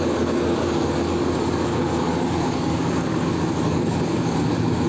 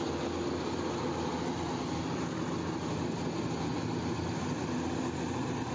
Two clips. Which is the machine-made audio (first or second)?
first